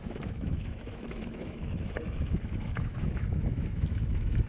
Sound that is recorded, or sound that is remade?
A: remade